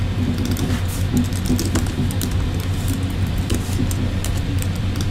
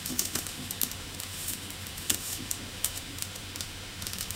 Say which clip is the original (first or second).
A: first